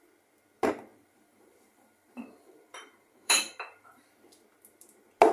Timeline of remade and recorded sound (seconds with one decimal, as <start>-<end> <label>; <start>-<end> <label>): 0.0-0.9 recorded; 0.9-4.1 remade; 4.1-5.3 recorded